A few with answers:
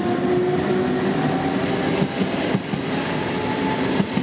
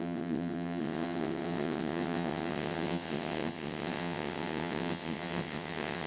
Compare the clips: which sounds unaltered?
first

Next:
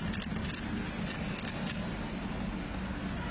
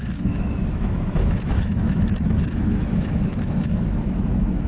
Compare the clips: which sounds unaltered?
first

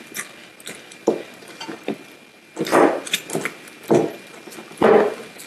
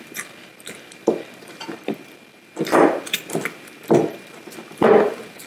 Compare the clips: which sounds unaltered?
first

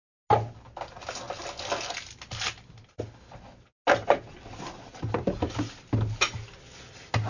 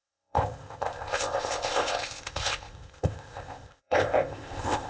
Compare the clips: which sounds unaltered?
first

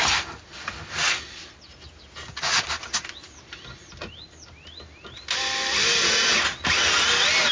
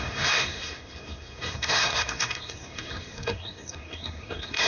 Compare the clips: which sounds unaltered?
first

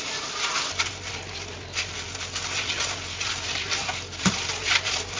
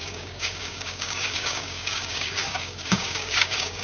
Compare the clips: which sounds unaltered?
first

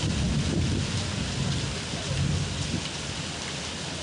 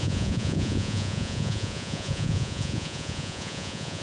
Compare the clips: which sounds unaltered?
first